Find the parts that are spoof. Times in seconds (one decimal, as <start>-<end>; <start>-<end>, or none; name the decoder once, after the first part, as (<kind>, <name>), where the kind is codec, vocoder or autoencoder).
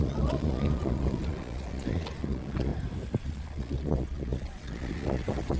0.0-2.7 (vocoder, Vocos); 3.2-5.6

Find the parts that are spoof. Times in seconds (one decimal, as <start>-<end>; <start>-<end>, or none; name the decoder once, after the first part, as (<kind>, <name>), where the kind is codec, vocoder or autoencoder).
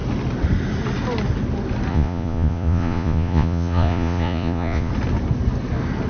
1.9-4.9 (vocoder, Vocos)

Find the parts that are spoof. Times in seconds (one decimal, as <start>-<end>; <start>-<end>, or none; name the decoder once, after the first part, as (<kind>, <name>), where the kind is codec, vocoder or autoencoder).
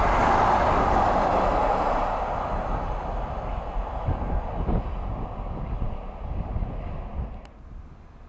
none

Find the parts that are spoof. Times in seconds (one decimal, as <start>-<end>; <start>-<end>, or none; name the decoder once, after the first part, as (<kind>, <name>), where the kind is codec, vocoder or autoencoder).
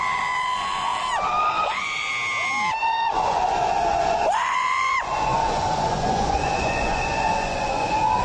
0.0-0.9 (vocoder, Vocos); 1.5-2.1; 2.8-8.2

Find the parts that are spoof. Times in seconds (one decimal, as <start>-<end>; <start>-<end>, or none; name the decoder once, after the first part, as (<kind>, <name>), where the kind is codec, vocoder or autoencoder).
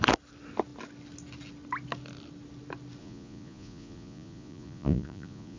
3.0-5.6 (vocoder, Vocos)